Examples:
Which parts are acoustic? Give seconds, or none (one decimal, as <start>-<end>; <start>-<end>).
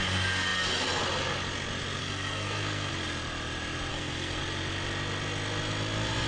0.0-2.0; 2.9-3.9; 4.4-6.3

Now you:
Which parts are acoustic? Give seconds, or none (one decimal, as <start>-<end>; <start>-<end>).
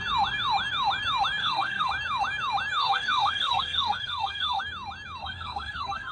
0.0-1.4; 1.9-2.8; 4.6-5.2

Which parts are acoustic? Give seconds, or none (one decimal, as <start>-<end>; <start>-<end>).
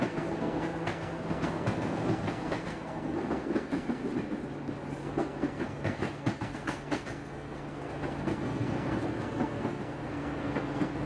4.0-4.9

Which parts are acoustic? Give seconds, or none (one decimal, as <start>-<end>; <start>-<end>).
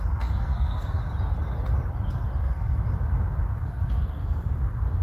1.0-2.4; 2.8-3.6